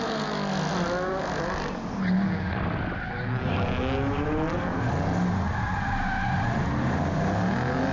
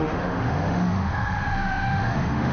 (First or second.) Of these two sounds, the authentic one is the first